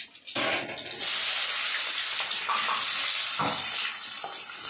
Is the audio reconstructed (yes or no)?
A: no